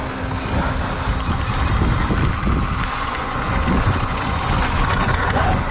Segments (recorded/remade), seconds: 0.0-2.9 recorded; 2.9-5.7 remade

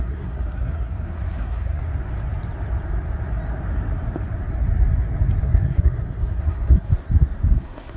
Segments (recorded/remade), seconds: 0.0-1.8 remade; 1.8-5.4 recorded; 5.4-6.9 remade; 6.9-7.5 recorded; 7.5-8.0 remade

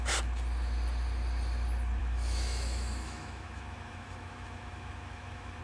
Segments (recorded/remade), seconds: 0.0-2.0 recorded; 2.0-5.6 remade

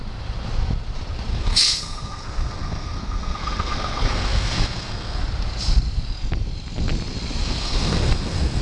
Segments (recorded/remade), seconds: 0.0-1.3 recorded; 1.3-5.2 remade; 5.2-7.4 recorded; 7.4-8.6 remade

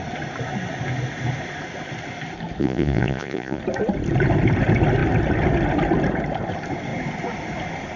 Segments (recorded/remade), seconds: 0.0-2.6 recorded; 2.6-3.6 remade; 3.6-8.0 recorded